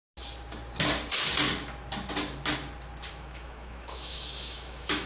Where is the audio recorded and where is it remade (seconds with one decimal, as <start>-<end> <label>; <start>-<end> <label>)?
0.0-3.1 recorded; 3.1-5.1 remade